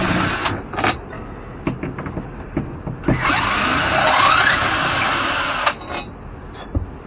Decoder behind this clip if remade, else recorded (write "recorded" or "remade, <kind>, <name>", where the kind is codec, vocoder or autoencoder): recorded